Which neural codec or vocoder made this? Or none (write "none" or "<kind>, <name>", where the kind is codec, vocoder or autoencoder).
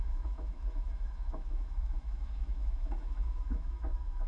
autoencoder, DAC-VAE